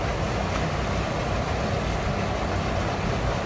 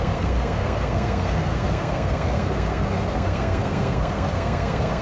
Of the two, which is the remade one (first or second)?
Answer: second